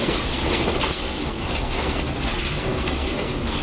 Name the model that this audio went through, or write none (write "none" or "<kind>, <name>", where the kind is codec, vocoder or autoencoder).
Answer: codec, SNAC